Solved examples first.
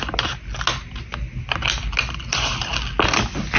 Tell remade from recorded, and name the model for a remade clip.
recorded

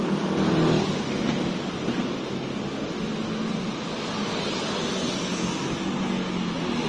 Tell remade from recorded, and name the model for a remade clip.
recorded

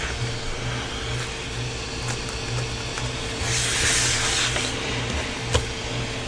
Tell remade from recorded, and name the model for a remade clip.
recorded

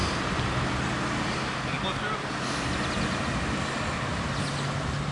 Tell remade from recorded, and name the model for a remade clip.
recorded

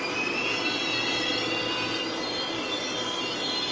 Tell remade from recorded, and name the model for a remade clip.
recorded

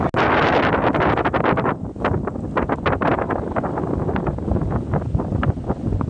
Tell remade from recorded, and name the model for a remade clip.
recorded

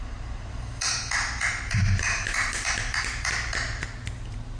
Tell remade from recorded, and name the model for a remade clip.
recorded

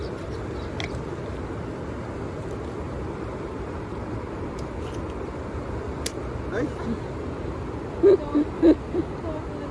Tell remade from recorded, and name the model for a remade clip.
recorded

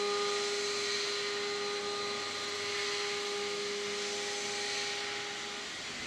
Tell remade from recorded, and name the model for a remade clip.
recorded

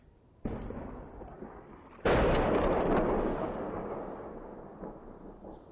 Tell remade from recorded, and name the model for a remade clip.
recorded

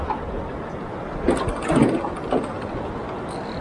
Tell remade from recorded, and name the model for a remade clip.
recorded